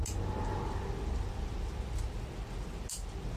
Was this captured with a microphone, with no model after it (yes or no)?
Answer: yes